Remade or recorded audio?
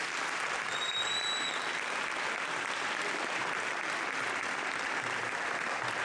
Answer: recorded